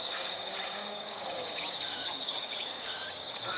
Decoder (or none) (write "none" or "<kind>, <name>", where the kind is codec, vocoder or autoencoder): codec, DAC